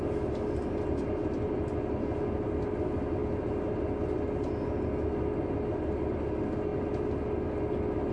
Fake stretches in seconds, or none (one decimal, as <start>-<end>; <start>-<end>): none